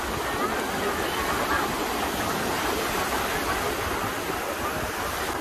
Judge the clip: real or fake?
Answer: real